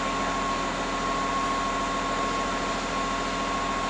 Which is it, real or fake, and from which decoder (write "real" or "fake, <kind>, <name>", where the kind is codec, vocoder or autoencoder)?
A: real